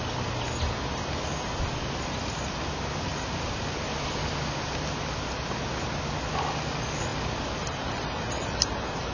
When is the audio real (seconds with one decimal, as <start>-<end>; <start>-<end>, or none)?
0.0-7.1; 8.7-9.1